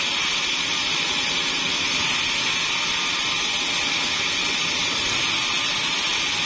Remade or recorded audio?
recorded